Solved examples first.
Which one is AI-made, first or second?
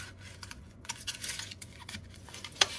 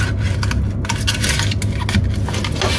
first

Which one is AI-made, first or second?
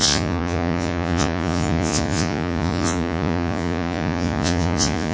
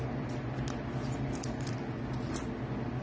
first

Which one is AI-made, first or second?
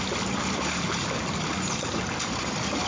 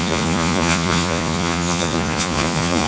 second